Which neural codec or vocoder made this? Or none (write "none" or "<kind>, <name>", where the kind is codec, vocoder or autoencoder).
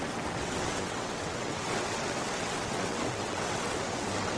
vocoder, WaveNeXt